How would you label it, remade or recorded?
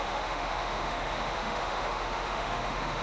remade